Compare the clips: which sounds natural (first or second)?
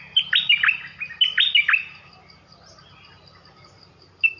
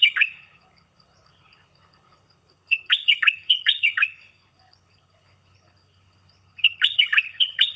first